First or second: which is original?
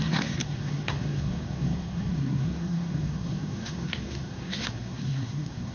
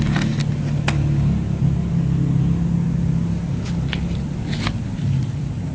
second